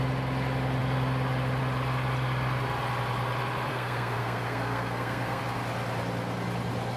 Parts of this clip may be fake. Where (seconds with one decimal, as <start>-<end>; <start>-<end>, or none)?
3.7-5.4